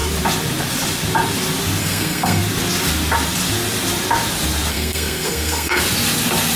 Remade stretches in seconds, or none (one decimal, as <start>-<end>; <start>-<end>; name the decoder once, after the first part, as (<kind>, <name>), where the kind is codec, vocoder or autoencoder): 1.8-2.4 (codec, SNAC); 4.7-5.8